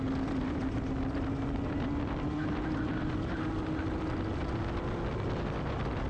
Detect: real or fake real